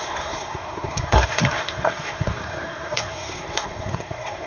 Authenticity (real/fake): fake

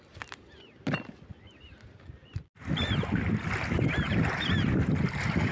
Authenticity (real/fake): real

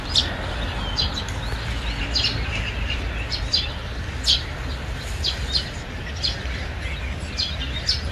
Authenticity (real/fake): real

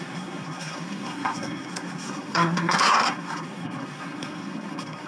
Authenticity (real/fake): fake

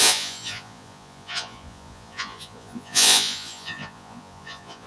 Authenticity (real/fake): fake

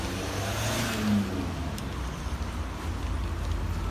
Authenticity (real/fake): real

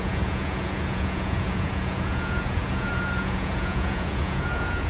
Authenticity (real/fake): fake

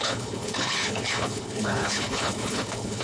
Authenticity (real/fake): fake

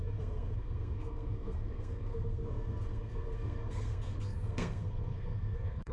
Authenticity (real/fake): fake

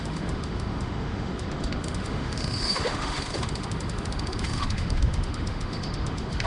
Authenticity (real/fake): fake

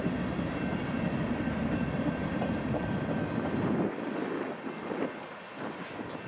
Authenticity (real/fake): real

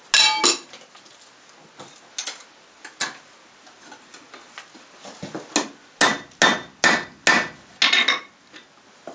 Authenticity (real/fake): real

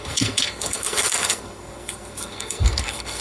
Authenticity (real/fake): fake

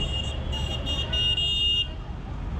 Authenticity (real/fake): real